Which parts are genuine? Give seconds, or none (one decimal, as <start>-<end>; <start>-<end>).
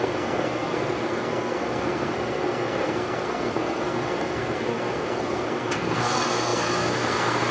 none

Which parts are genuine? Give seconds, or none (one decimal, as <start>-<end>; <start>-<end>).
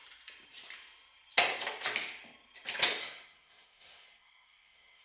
0.0-3.0